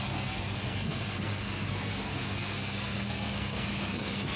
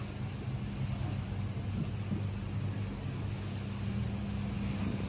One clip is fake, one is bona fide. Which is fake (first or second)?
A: first